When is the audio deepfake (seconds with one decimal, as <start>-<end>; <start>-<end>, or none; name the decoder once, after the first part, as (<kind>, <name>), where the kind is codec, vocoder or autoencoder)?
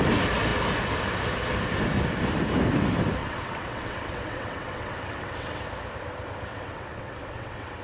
3.2-5.6 (vocoder, WaveNeXt); 6.5-7.8